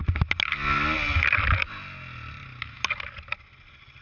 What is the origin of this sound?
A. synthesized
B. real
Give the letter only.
B